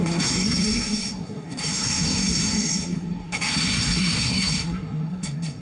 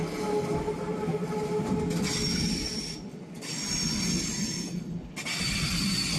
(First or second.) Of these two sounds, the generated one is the first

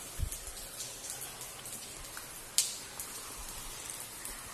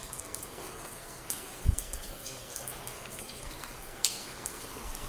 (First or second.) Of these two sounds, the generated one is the second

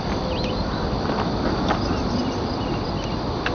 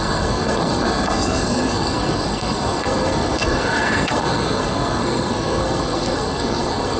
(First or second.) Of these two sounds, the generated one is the second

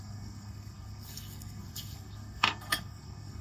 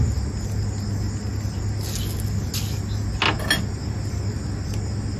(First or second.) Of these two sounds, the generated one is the first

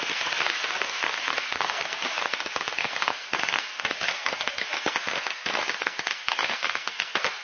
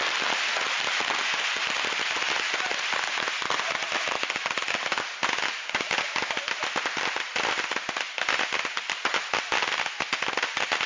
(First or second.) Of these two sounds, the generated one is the first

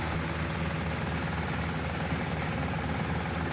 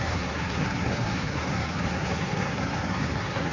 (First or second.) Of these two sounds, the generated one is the second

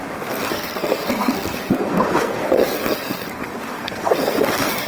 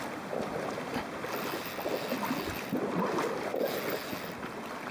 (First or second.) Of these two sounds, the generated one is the first